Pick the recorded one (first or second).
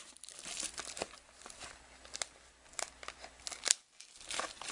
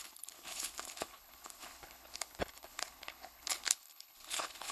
first